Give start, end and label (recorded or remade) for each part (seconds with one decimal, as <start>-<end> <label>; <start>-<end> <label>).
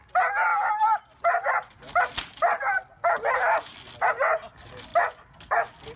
0.0-6.0 recorded